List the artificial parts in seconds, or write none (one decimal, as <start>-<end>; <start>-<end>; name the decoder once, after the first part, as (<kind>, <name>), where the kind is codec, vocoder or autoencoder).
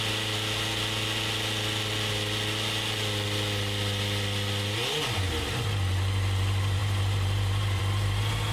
6.8-7.8 (vocoder, BigVGAN v2)